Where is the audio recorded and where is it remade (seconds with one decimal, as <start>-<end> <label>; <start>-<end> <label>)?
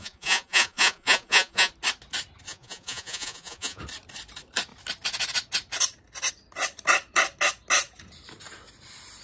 0.0-1.7 remade; 1.7-2.5 recorded; 2.5-3.8 remade; 3.8-9.2 recorded